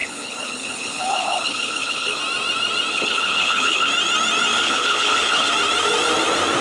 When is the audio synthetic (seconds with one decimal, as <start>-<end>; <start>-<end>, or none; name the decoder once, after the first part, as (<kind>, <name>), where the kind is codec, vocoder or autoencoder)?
0.0-2.2 (codec, HILCodec); 2.9-3.9; 4.5-5.5